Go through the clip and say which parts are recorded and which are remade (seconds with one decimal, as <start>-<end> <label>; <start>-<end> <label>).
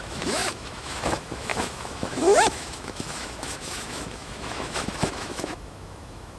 0.0-6.4 remade